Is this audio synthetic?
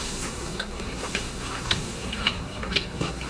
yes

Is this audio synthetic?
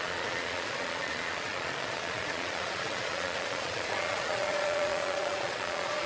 yes